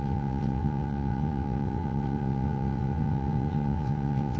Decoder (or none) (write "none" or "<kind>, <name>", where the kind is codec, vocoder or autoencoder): vocoder, WaveNeXt